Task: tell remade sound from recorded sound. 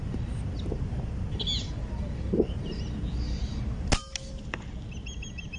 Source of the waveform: recorded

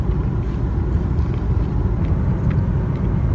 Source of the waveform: recorded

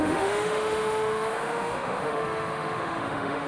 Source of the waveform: remade